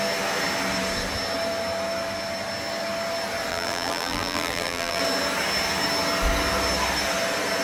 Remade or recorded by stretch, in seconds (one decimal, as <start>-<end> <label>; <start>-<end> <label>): 0.0-3.5 recorded; 3.5-5.0 remade; 5.0-7.6 recorded